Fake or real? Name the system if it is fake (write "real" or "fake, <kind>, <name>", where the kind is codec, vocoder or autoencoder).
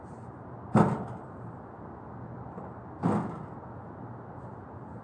real